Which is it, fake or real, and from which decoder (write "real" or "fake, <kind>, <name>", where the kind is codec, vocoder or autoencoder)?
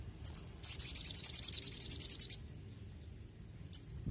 real